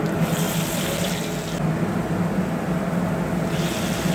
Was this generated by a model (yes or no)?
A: no